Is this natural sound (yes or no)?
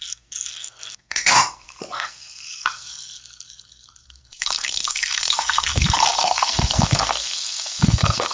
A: no